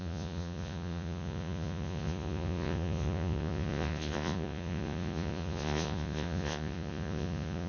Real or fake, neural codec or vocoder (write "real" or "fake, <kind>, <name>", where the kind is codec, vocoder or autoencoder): fake, vocoder, Vocos